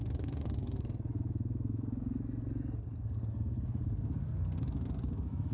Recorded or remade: remade